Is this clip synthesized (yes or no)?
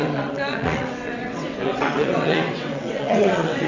yes